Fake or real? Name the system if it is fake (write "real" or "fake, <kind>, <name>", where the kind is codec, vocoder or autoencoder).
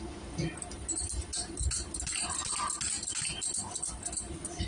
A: real